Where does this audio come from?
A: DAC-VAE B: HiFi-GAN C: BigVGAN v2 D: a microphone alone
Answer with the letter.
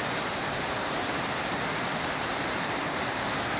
C